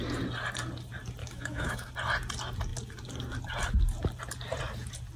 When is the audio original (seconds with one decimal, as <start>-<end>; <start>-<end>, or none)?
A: 0.0-1.2; 1.9-5.2